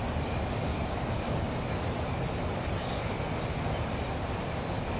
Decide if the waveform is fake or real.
real